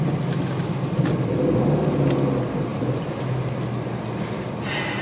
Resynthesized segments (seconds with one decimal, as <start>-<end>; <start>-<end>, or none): 2.7-3.2